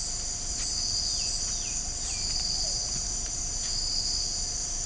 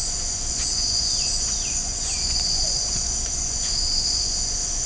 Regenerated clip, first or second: second